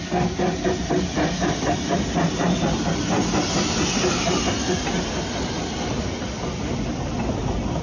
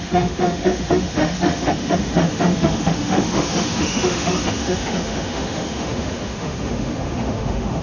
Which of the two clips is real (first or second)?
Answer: first